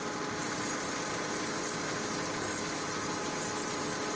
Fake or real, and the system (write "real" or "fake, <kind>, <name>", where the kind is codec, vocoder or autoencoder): real